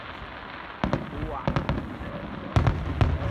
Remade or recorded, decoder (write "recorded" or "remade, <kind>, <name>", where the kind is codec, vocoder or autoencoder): recorded